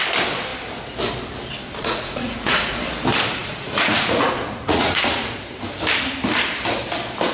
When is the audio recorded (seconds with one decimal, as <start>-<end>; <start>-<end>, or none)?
0.0-1.8; 2.8-3.4; 5.4-7.3